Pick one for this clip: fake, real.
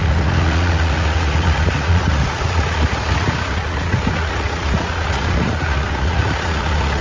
fake